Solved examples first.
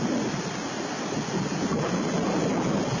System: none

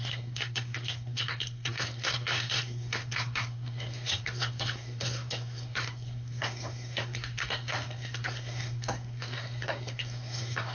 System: codec, SNAC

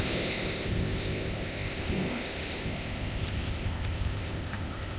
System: codec, ZipCodec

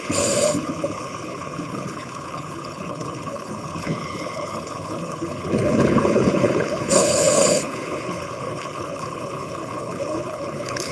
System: codec, HILCodec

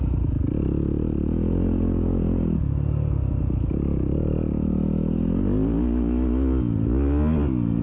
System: none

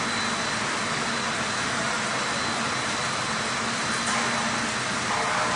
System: none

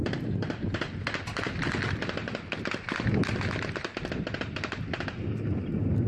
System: none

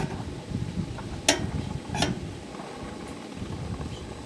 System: none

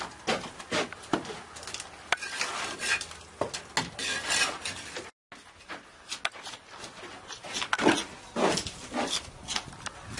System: none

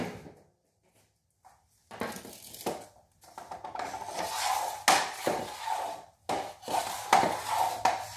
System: none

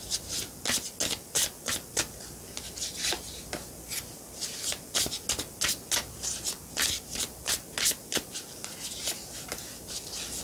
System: none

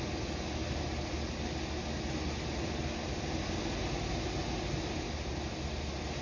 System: none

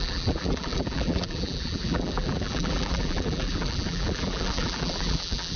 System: vocoder, BigVGAN v2